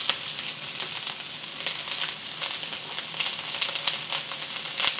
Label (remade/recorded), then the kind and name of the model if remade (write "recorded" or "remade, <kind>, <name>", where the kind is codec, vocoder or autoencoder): recorded